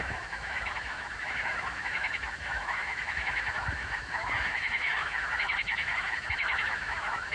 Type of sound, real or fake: fake